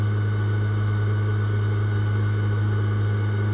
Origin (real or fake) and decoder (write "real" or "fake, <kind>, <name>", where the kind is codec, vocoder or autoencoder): real